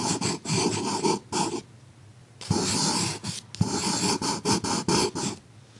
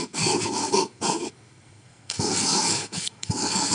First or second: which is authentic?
first